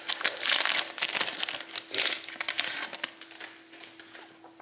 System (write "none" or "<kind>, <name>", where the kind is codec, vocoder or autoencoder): none